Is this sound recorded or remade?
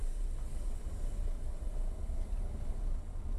recorded